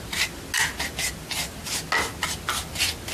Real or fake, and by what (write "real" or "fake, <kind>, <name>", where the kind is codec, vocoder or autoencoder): real